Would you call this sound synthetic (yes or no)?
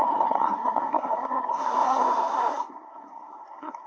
yes